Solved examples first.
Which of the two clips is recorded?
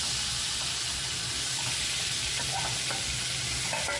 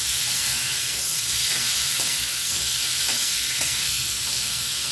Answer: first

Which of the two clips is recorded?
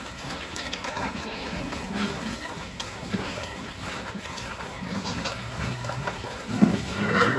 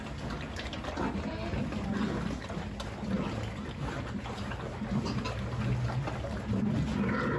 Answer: second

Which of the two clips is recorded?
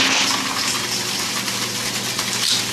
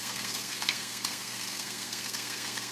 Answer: first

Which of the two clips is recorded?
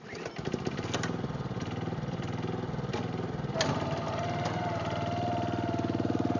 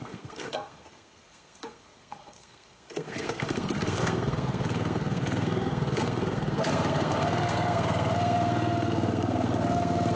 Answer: first